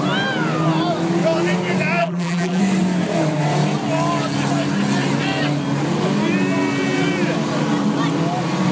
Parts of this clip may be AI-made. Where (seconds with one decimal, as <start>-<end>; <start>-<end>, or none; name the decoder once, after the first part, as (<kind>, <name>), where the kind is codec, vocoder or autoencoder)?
2.0-2.6 (vocoder, BigVGAN v2)